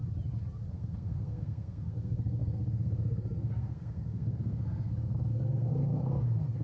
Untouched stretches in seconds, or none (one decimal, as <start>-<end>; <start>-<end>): 0.0-0.7